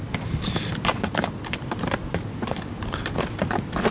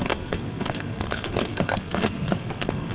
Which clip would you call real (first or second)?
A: first